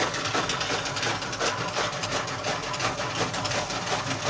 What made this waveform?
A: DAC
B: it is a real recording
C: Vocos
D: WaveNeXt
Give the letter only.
B